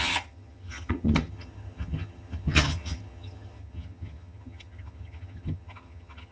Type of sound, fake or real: fake